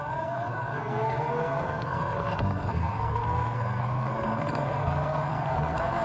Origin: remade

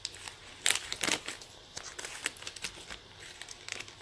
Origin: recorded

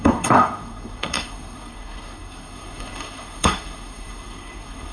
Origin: remade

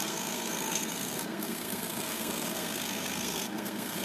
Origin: remade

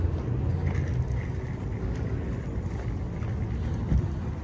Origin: recorded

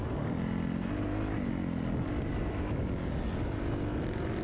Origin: recorded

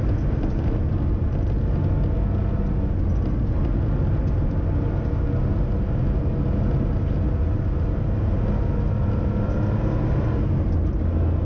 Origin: recorded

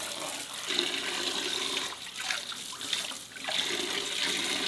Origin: recorded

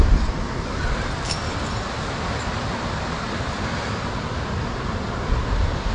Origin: recorded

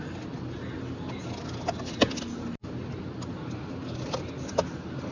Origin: recorded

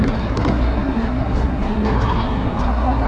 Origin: remade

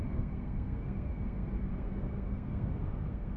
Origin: remade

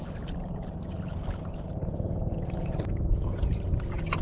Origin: recorded